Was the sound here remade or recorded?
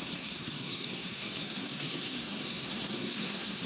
remade